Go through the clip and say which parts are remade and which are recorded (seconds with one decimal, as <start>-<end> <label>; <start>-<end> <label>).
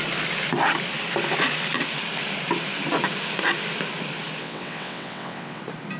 0.0-4.4 recorded; 4.4-5.6 remade; 5.6-6.0 recorded